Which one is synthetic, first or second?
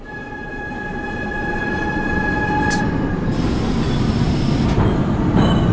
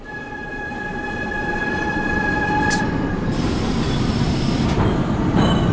second